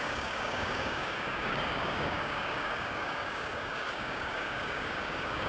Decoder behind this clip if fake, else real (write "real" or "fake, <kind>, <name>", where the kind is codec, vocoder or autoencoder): fake, codec, DAC